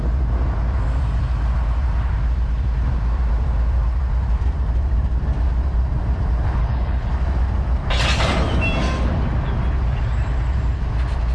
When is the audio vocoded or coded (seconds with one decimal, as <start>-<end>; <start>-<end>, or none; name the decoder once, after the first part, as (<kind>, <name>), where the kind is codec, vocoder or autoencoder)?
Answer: 6.6-7.1 (codec, HILCodec)